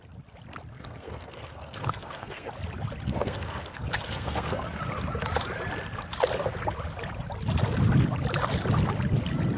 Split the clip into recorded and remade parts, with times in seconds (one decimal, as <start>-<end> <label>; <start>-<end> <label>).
0.0-0.7 recorded; 0.7-2.5 remade; 2.5-3.1 recorded; 3.1-4.8 remade; 4.8-9.6 recorded